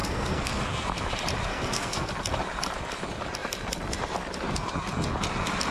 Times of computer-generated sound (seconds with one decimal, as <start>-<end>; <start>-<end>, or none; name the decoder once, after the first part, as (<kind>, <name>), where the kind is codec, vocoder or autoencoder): 0.0-0.6 (codec, SNAC); 1.5-2.1